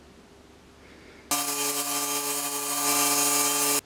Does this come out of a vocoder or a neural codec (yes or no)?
no